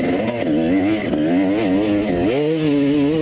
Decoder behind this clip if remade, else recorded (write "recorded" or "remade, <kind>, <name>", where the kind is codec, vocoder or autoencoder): recorded